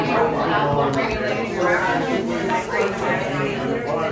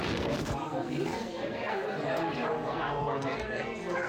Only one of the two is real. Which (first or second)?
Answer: first